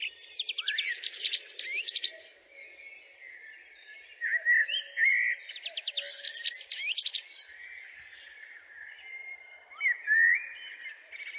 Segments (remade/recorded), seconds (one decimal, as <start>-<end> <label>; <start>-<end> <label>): 0.0-11.4 recorded